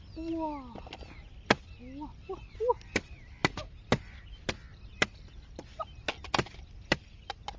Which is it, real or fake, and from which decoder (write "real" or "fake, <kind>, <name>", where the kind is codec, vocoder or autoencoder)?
real